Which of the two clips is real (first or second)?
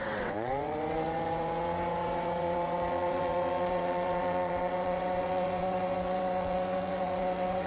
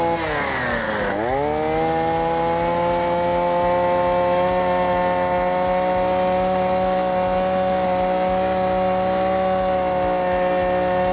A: second